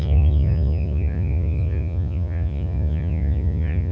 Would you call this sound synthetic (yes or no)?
yes